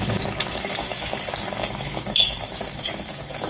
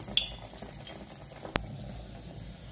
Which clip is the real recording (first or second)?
second